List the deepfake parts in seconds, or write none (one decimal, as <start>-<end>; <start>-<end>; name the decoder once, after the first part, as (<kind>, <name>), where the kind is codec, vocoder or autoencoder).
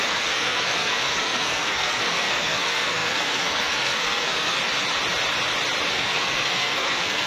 0.0-4.6 (codec, SNAC); 5.9-7.3